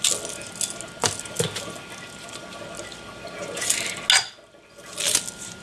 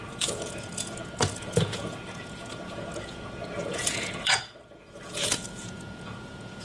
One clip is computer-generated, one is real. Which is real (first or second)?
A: first